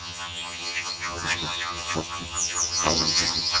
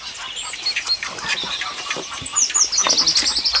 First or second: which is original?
second